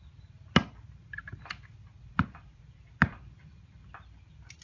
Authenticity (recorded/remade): recorded